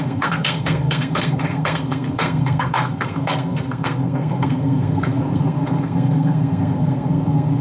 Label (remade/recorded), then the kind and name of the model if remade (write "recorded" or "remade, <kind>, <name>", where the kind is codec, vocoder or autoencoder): remade, codec, SNAC